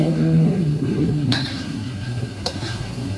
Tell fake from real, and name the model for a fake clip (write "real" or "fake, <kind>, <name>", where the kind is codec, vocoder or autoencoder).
fake, codec, SNAC